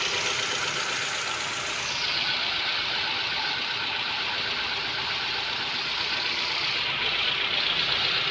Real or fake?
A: real